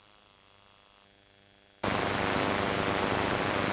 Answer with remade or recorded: recorded